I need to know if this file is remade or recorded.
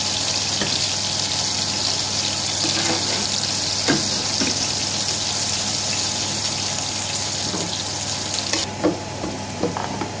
recorded